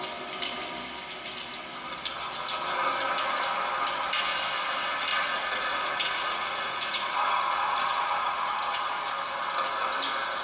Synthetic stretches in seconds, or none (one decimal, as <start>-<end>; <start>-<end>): 5.1-8.9